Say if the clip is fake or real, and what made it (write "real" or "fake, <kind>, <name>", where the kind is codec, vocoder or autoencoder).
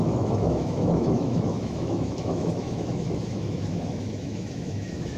fake, autoencoder, DAC-VAE